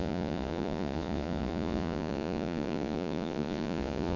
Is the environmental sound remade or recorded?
remade